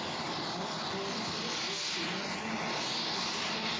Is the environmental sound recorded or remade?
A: recorded